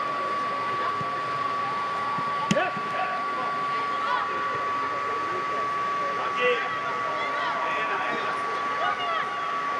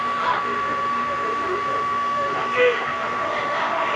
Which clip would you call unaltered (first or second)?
first